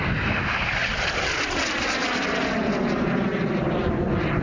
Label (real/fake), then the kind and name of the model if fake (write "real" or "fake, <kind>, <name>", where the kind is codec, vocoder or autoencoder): real